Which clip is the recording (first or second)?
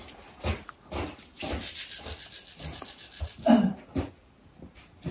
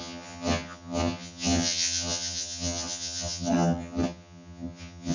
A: first